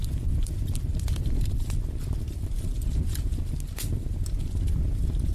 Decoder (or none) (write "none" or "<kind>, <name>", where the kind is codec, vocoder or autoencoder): none